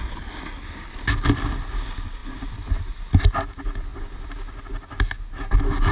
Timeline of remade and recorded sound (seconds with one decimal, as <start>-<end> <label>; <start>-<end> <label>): 0.0-2.2 recorded; 2.2-3.3 remade; 3.3-5.9 recorded